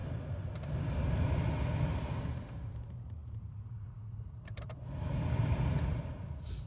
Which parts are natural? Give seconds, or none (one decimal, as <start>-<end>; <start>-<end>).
0.0-2.0